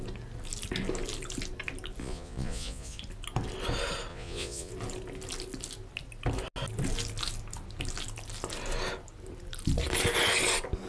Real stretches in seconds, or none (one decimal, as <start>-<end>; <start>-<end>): 0.0-2.0; 3.0-4.1; 4.7-10.9